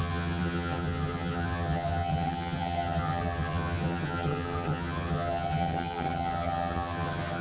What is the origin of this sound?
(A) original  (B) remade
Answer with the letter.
B